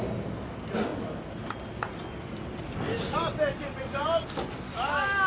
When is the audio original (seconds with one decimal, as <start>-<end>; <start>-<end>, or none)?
0.0-5.3